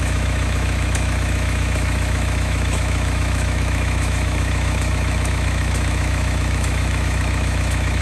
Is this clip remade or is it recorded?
remade